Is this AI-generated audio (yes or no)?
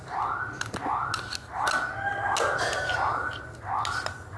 no